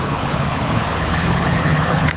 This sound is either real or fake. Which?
fake